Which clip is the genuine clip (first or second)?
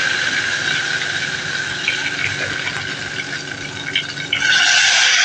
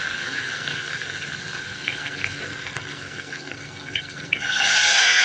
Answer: first